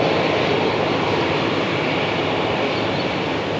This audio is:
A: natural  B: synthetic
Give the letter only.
B